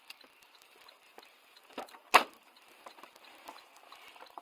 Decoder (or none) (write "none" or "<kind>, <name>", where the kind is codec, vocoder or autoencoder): vocoder, BigVGAN v2